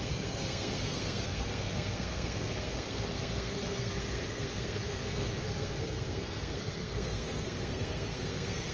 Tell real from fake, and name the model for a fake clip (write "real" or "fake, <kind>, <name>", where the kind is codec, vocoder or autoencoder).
fake, codec, SNAC